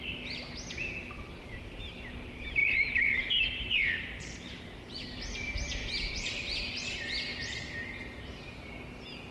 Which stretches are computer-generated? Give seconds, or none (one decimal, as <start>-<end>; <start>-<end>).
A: 2.6-6.1